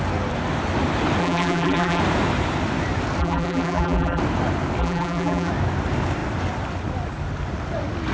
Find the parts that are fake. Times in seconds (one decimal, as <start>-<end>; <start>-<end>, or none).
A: 1.2-2.0; 3.2-4.2; 4.8-5.5